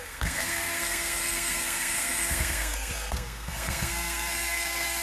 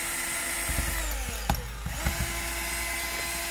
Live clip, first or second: second